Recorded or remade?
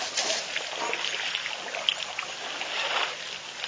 recorded